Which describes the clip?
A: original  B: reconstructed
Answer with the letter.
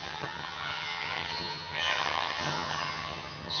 B